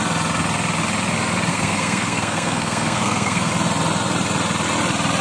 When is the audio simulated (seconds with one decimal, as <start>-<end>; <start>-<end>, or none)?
1.5-3.5